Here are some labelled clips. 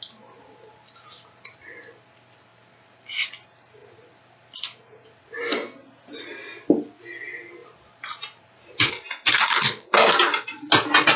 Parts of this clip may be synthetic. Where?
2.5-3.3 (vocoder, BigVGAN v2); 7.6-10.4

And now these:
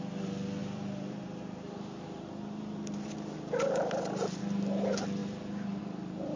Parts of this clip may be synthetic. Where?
0.6-4.4 (vocoder, BigVGAN v2); 5.2-5.8

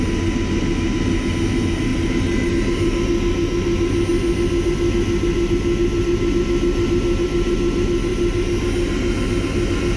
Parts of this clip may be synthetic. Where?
1.9-2.5 (vocoder, BigVGAN v2)

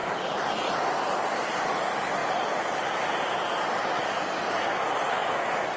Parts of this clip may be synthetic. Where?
0.0-2.2 (vocoder, BigVGAN v2); 4.4-5.2

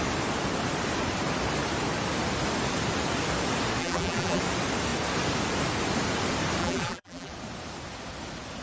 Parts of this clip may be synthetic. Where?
3.8-4.4 (vocoder, BigVGAN v2); 6.6-7.3

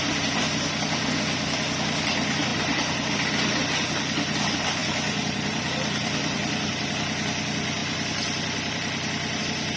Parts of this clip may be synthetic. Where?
2.5-3.1 (vocoder, BigVGAN v2); 4.8-6.9; 7.8-9.4